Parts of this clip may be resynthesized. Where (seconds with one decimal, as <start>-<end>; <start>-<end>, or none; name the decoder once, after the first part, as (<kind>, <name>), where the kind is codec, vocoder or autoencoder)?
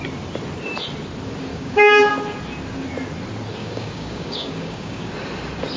1.5-2.1 (codec, DAC); 3.6-5.1